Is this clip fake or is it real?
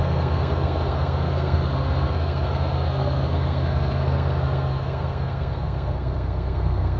fake